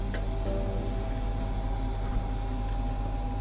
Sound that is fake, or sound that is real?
real